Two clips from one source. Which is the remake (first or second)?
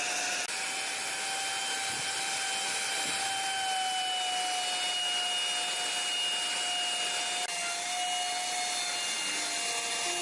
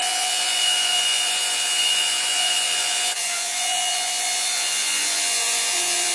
second